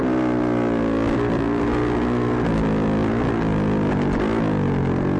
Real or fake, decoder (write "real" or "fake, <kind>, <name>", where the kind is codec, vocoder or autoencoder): real